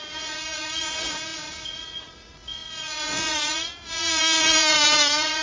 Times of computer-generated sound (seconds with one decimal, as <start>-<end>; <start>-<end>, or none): 0.0-5.4